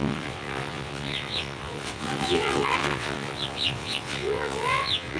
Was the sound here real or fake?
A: fake